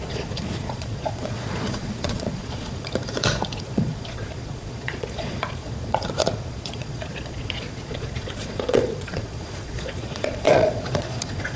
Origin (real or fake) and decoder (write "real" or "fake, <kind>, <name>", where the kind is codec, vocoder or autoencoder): fake, vocoder, Vocos